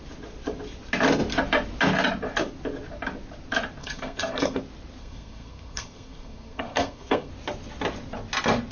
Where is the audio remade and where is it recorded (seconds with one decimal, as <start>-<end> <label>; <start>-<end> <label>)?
0.0-3.8 recorded; 3.8-4.6 remade; 4.6-5.0 recorded; 5.0-7.3 remade; 7.3-8.7 recorded